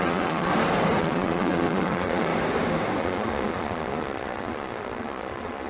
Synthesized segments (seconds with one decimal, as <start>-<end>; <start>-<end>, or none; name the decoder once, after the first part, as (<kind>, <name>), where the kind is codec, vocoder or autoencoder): 0.0-0.5 (vocoder, Vocos); 1.0-2.3; 3.0-5.7